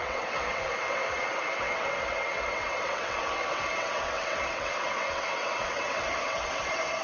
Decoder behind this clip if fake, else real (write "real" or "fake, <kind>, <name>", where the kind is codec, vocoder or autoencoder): fake, vocoder, WaveNeXt